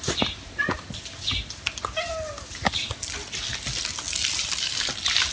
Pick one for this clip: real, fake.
real